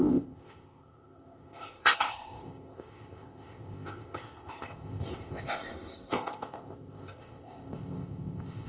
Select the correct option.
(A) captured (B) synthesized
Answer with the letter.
B